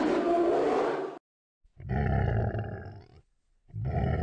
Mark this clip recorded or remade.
recorded